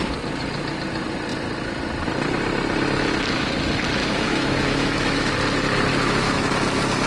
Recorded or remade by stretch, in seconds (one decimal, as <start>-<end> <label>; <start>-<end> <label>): 0.0-4.0 recorded; 4.0-5.3 remade; 5.3-5.9 recorded; 5.9-6.5 remade; 6.5-7.1 recorded